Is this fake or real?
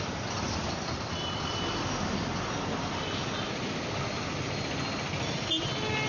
real